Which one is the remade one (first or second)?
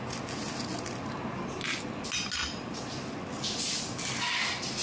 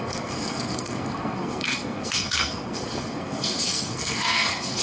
second